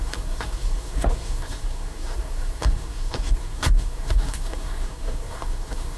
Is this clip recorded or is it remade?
remade